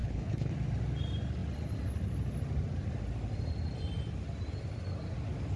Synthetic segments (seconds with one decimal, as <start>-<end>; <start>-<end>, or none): 0.0-0.5